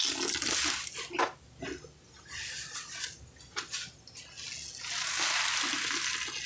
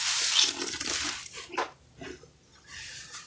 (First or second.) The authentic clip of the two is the first